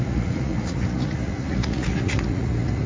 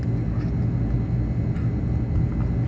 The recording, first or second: second